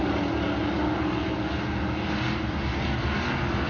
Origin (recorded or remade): recorded